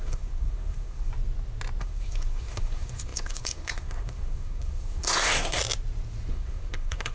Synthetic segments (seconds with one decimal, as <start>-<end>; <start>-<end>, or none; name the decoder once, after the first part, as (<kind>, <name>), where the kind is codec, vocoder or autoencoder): 0.0-1.1 (codec, SNAC); 1.8-5.6; 6.3-7.1